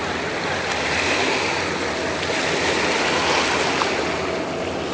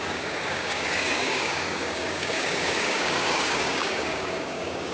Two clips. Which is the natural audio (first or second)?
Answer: first